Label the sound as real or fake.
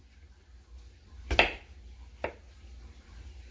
real